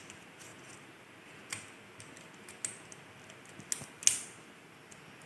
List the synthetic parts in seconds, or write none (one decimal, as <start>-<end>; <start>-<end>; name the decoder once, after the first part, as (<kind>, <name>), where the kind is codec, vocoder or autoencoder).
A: none